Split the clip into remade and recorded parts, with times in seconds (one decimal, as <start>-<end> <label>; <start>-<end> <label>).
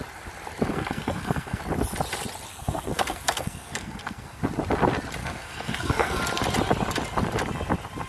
0.0-0.7 recorded; 0.7-1.6 remade; 1.6-2.5 recorded; 2.5-4.4 remade; 4.4-5.2 recorded; 5.2-6.2 remade; 6.2-8.1 recorded